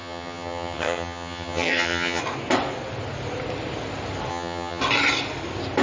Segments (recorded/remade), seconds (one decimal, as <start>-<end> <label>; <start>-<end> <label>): 0.0-2.2 remade; 2.2-4.3 recorded; 4.3-4.8 remade; 4.8-5.8 recorded